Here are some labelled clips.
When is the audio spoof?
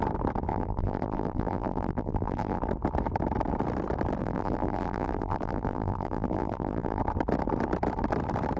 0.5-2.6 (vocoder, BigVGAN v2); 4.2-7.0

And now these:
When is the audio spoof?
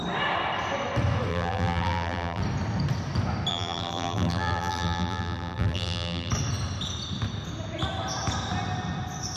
1.3-2.4 (vocoder, BigVGAN v2); 3.5-6.3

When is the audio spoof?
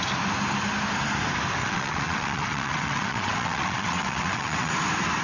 1.6-4.7 (vocoder, WaveNeXt)